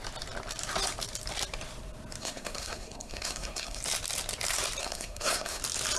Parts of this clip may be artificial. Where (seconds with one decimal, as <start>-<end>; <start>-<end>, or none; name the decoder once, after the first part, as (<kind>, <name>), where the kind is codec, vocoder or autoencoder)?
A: 2.2-3.8 (codec, SNAC); 4.8-5.6